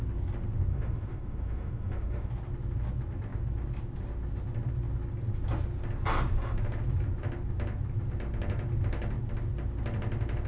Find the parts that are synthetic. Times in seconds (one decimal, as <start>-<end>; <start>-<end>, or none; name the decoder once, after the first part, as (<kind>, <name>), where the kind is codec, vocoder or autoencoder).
0.7-2.3 (autoencoder, DAC-VAE)